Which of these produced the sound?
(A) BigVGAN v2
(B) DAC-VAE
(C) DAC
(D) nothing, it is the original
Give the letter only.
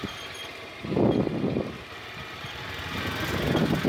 D